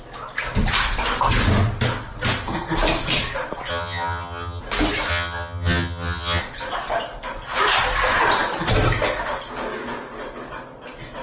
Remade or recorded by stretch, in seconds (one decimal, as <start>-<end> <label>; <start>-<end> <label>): 0.0-3.7 recorded; 3.7-4.6 remade; 4.6-5.1 recorded; 5.1-6.4 remade; 6.4-11.2 recorded